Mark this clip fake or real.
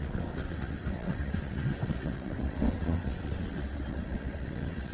fake